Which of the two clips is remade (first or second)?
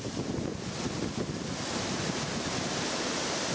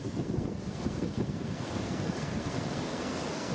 second